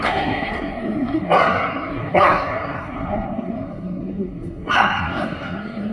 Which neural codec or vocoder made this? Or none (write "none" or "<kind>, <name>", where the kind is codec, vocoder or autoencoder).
codec, SNAC